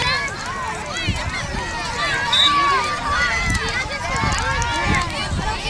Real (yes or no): yes